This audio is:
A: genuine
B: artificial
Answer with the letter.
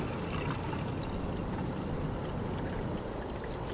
A